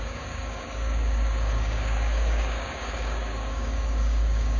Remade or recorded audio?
remade